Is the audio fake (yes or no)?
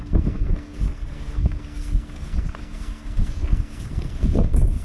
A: yes